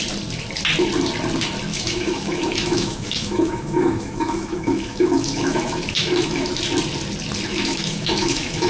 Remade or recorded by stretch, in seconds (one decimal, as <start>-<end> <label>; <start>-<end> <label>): 0.0-1.7 recorded; 1.7-6.5 remade; 6.5-7.5 recorded; 7.5-8.7 remade